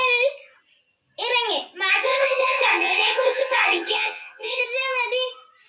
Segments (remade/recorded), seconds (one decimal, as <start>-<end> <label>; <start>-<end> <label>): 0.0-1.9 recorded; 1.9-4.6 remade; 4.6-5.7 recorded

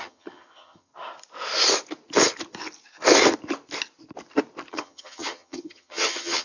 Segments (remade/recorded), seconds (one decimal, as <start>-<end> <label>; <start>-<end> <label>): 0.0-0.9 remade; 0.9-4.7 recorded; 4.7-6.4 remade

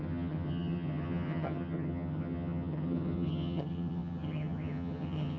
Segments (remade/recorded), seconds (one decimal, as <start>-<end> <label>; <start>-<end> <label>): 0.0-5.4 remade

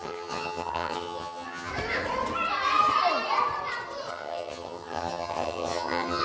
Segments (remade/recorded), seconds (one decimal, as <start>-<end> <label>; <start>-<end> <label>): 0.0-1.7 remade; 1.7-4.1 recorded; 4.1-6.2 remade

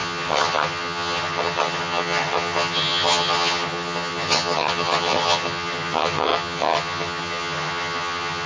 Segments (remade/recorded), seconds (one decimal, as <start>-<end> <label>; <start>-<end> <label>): 0.0-8.5 remade

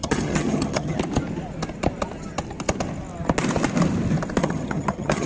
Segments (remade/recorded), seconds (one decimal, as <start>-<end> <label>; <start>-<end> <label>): 0.0-1.0 remade; 1.0-4.4 recorded; 4.4-5.3 remade

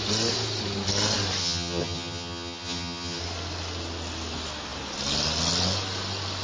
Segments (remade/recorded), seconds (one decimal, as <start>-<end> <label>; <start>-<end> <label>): 0.0-1.4 recorded; 1.4-3.2 remade; 3.2-6.4 recorded